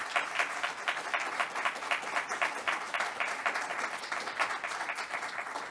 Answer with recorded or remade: recorded